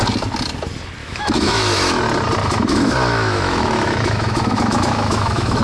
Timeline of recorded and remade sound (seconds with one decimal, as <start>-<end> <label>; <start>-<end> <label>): 0.0-1.0 recorded; 1.0-2.0 remade; 2.0-2.4 recorded; 2.4-5.6 remade

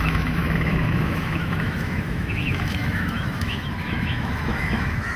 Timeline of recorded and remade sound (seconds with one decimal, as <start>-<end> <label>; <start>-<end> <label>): 0.0-5.2 remade

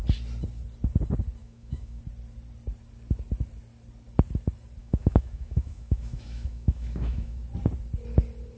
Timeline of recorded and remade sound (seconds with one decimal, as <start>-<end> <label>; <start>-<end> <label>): 0.0-1.4 recorded; 1.4-2.0 remade; 2.0-4.8 recorded; 4.8-7.4 remade; 7.4-8.6 recorded

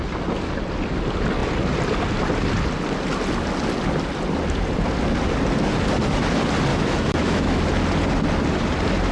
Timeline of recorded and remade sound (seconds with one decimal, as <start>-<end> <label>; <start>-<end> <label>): 0.0-6.7 recorded; 6.7-7.6 remade; 7.6-9.1 recorded

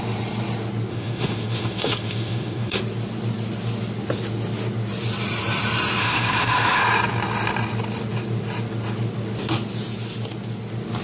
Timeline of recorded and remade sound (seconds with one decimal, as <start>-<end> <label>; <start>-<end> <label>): 0.0-0.9 recorded; 0.9-2.8 remade; 2.8-6.0 recorded; 6.0-6.8 remade; 6.8-11.0 recorded

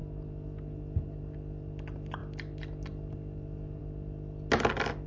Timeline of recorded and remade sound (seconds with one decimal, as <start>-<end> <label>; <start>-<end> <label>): 0.0-5.1 recorded

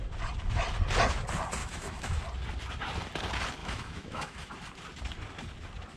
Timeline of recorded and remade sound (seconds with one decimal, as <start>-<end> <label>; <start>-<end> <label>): 0.0-1.6 recorded; 1.6-2.2 remade; 2.2-3.6 recorded; 3.6-4.5 remade; 4.5-6.0 recorded

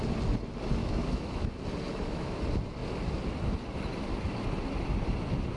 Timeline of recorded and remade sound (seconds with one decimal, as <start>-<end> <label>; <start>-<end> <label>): 0.0-0.8 recorded; 0.8-1.5 remade; 1.5-1.9 recorded; 1.9-2.4 remade; 2.4-5.6 recorded